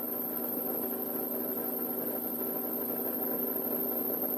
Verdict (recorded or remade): recorded